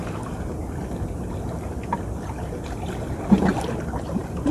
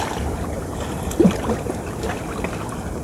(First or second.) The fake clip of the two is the second